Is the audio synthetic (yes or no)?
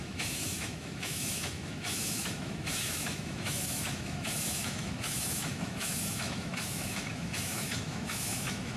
yes